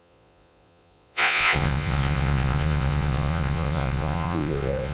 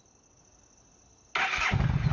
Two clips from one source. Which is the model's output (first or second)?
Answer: first